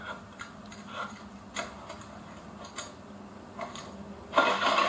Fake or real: real